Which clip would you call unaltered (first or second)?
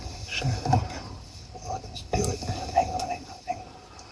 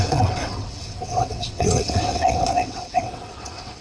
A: first